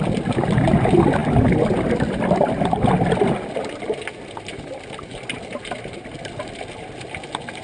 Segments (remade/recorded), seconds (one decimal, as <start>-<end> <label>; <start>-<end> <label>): 0.0-7.6 recorded